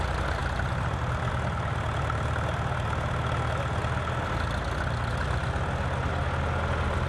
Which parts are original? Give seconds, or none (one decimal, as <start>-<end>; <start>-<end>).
0.0-7.1